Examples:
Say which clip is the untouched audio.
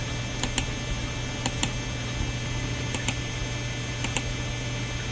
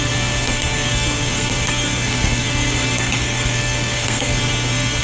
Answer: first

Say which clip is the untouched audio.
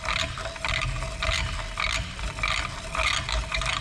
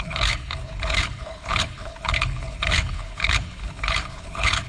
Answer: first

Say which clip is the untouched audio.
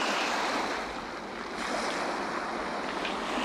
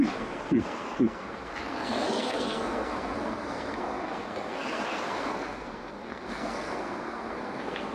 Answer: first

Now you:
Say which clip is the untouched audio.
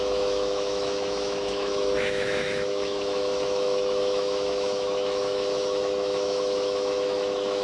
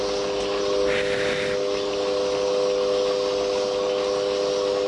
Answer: second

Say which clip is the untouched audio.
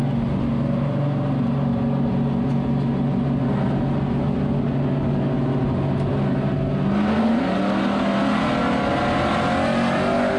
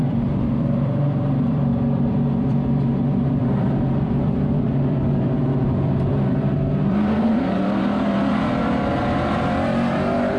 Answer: first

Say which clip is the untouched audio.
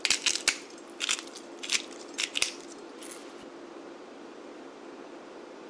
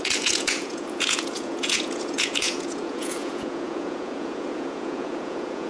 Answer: first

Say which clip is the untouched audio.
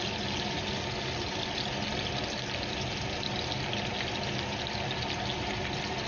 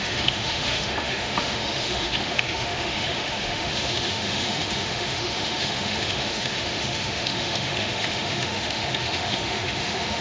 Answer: first